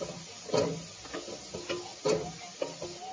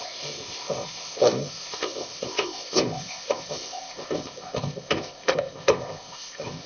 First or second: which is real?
first